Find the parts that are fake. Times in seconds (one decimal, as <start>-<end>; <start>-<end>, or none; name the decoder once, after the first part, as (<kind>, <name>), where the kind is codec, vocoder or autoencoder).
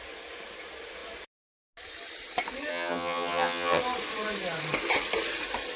2.7-3.8 (vocoder, HiFi-GAN)